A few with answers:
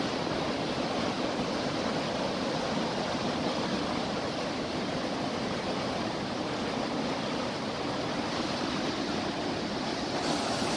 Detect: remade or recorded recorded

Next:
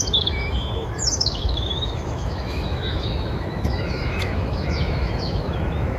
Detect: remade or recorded remade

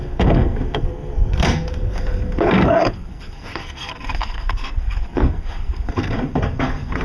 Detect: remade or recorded remade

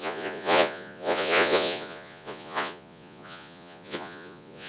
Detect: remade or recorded remade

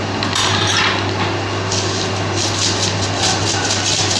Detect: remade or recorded recorded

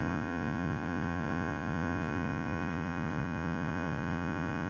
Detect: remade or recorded remade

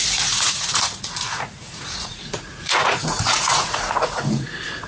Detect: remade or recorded remade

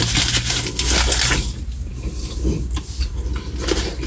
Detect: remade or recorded recorded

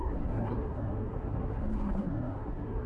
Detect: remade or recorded remade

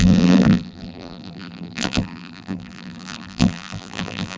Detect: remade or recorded remade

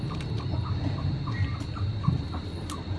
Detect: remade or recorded recorded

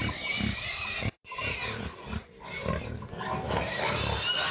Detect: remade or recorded recorded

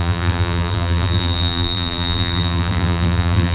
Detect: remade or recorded remade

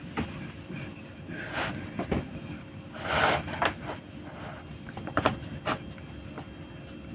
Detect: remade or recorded recorded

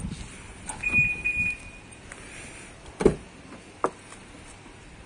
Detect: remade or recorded recorded